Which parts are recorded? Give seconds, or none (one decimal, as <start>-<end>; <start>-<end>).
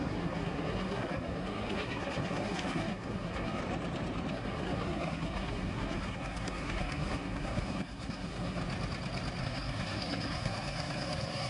3.6-4.3; 8.6-9.4